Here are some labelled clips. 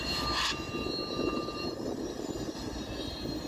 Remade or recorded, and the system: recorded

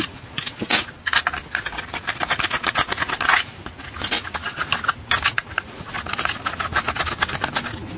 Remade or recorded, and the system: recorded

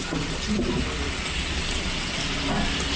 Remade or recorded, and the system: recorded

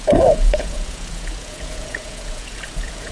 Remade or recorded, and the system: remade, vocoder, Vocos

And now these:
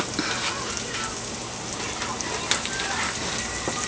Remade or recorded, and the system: recorded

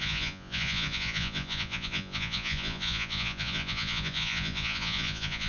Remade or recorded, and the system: remade, vocoder, Vocos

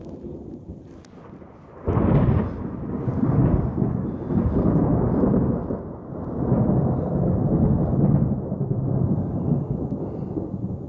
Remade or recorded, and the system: recorded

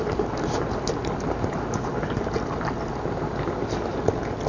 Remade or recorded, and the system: recorded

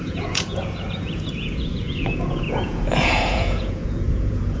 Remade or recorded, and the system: remade, vocoder, Vocos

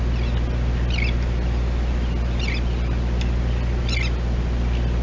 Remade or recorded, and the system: recorded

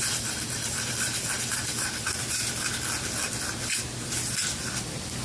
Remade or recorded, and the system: recorded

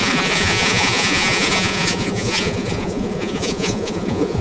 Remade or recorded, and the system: remade, vocoder, Vocos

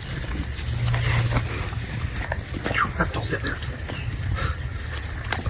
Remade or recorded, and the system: recorded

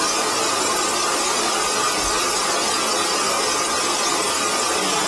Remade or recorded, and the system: recorded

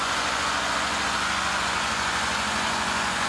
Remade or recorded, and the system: remade, vocoder, Vocos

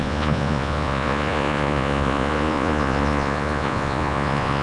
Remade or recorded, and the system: remade, vocoder, Vocos